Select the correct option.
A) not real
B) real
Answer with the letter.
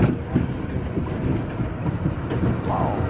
B